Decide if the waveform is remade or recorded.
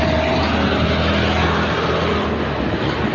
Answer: recorded